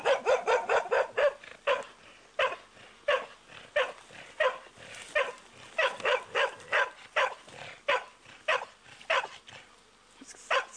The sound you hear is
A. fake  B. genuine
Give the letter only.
B